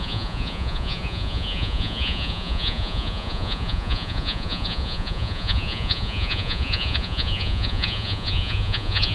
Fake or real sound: fake